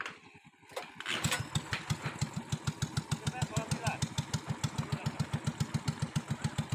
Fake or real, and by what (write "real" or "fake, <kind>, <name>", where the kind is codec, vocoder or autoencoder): real